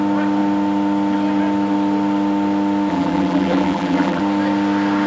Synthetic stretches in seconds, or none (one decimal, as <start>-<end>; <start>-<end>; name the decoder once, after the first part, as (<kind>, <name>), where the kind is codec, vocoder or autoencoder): 2.9-4.2 (vocoder, BigVGAN v2)

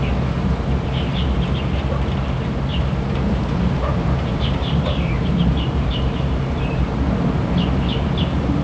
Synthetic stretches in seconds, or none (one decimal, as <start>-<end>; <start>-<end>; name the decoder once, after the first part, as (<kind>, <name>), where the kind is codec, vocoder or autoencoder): 2.7-6.2 (vocoder, BigVGAN v2)

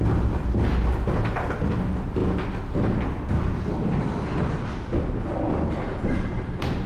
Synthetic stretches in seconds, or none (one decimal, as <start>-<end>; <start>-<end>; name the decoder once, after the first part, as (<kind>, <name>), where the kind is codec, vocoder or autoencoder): none

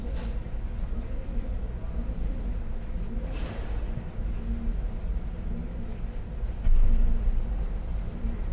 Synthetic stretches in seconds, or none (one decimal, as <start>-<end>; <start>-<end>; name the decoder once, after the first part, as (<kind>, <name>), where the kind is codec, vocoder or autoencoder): none

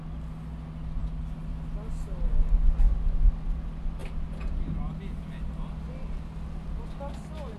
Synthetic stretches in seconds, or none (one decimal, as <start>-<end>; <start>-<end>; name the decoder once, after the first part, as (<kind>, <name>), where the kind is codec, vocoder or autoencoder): none

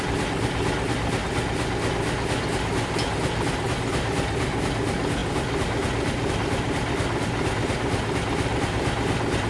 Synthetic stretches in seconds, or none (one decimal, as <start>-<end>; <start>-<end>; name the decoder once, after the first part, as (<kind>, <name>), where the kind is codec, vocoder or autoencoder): none